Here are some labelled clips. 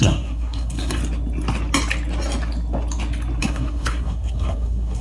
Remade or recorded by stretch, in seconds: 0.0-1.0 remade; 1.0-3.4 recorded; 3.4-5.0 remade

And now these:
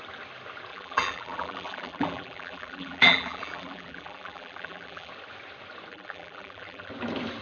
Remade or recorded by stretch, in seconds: 0.0-0.7 recorded; 0.7-5.1 remade; 5.1-5.9 recorded; 5.9-6.9 remade; 6.9-7.4 recorded

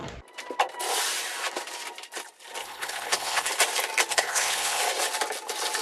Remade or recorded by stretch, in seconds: 0.0-2.6 recorded; 2.6-3.5 remade; 3.5-4.1 recorded; 4.1-4.8 remade; 4.8-5.8 recorded

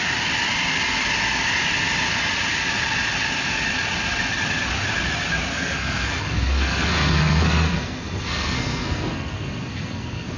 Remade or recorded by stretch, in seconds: 0.0-5.5 recorded; 5.5-10.4 remade

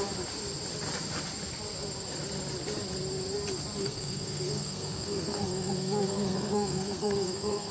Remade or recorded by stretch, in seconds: 0.0-3.8 recorded; 3.8-7.7 remade

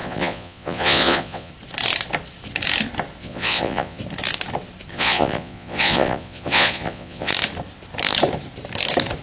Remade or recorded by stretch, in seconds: 0.0-1.5 remade; 1.5-3.2 recorded; 3.2-4.0 remade; 4.0-4.9 recorded; 4.9-7.3 remade; 7.3-9.2 recorded

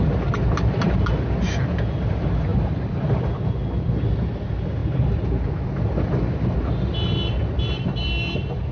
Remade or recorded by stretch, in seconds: 0.0-8.7 recorded

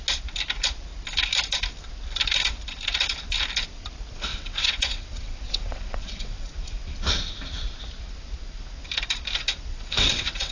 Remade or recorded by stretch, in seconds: 0.0-4.3 recorded; 4.3-6.5 remade; 6.5-9.7 recorded; 9.7-10.5 remade